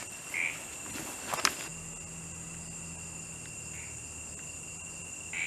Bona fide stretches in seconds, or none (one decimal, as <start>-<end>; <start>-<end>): 0.0-5.5